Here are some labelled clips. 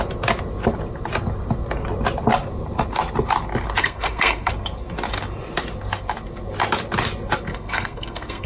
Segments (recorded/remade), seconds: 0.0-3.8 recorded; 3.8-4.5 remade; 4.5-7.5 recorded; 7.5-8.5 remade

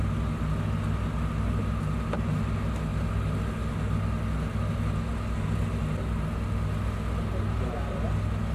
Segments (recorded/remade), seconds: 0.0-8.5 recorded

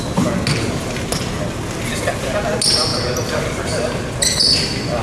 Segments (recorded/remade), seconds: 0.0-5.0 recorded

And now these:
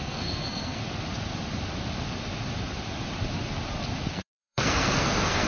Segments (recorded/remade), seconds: 0.0-0.8 remade; 0.8-4.1 recorded; 4.1-5.5 remade

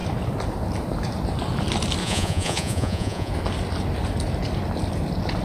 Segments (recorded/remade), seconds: 0.0-2.0 recorded; 2.0-3.3 remade; 3.3-5.4 recorded

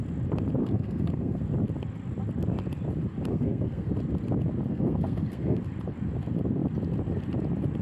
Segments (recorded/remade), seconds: 0.0-0.6 recorded; 0.6-1.4 remade; 1.4-3.3 recorded; 3.3-3.9 remade; 3.9-4.7 recorded; 4.7-5.6 remade; 5.6-7.8 recorded

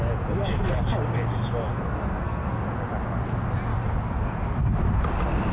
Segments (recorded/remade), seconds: 0.0-1.7 recorded; 1.7-2.6 remade; 2.6-5.5 recorded